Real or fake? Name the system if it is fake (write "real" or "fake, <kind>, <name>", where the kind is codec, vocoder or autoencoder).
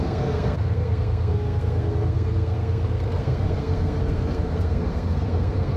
fake, codec, SNAC